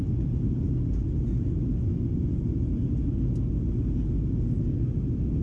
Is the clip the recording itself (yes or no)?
yes